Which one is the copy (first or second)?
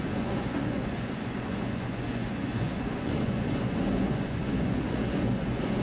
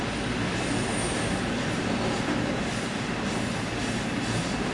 first